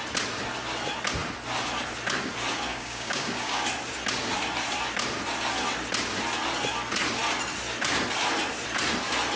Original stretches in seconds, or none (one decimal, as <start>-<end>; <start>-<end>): 0.0-2.7; 3.6-9.4